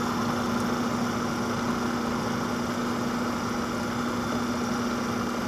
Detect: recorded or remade recorded